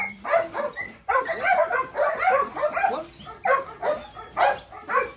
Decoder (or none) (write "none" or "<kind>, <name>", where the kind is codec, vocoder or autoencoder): none